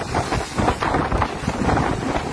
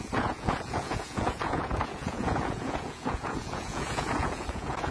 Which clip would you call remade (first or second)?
second